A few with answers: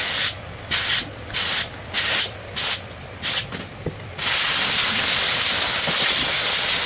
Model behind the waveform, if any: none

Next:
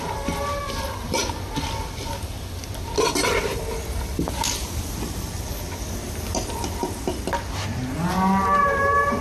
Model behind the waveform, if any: none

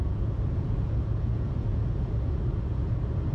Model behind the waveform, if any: vocoder, Vocos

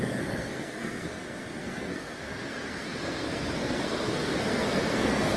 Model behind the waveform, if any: codec, SNAC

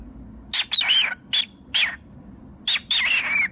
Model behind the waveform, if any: none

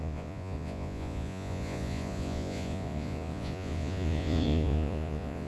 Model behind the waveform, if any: vocoder, Vocos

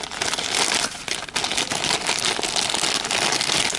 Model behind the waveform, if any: none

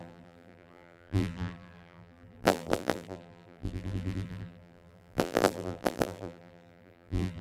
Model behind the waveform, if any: vocoder, BigVGAN v2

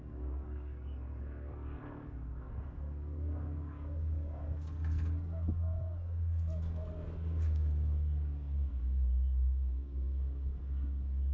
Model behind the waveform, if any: codec, SNAC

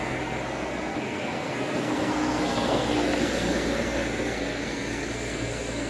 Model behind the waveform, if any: codec, SNAC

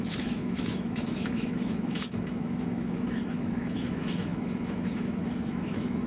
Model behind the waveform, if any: autoencoder, DAC-VAE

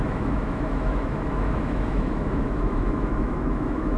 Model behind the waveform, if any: autoencoder, DAC-VAE